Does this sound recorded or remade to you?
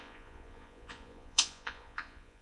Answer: remade